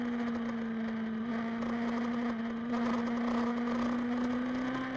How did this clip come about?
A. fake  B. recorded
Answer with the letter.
B